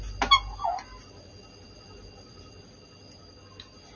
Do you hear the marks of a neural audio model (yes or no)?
no